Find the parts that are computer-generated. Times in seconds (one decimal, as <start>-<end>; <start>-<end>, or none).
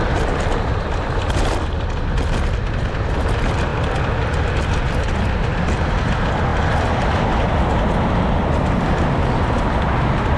none